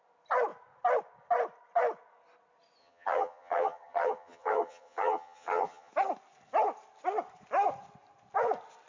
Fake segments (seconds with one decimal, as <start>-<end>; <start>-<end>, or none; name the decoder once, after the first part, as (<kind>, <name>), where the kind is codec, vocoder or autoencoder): 2.8-5.9 (vocoder, HiFi-GAN)